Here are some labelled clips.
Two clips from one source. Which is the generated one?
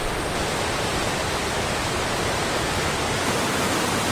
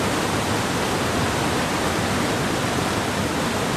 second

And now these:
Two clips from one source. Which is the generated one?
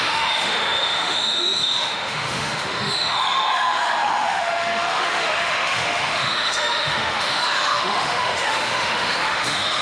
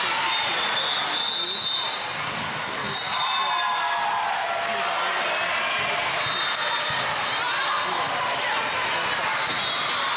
first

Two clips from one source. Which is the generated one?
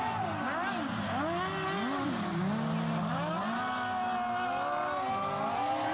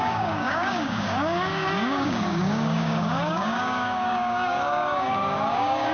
second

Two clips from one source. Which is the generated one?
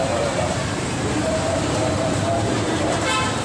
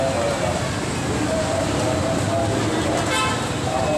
first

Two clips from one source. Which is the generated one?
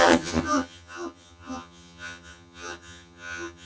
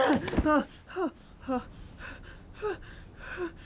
first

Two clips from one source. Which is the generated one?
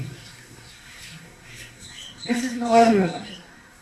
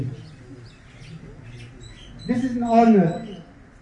first